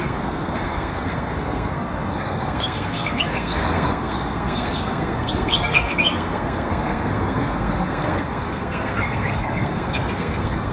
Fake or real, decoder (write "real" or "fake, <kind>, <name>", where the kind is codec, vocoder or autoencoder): fake, codec, SNAC